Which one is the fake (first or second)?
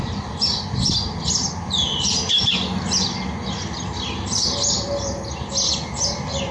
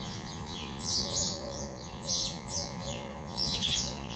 second